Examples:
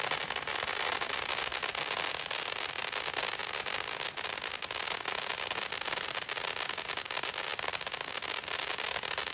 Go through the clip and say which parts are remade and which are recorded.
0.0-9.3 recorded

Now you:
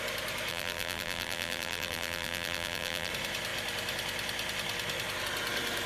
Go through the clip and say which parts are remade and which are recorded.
0.0-0.5 recorded; 0.5-3.1 remade; 3.1-5.9 recorded

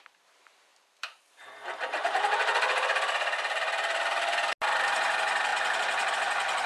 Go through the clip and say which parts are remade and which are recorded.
0.0-0.7 recorded; 0.7-4.5 remade; 4.5-5.5 recorded; 5.5-6.1 remade; 6.1-6.7 recorded

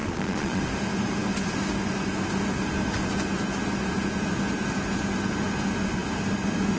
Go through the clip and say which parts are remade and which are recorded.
0.0-0.6 remade; 0.6-6.8 recorded